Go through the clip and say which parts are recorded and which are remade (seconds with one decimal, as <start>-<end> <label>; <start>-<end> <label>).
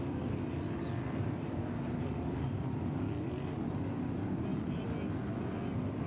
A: 0.0-6.1 recorded